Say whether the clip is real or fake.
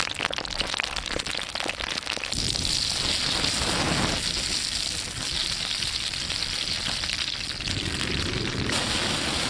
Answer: real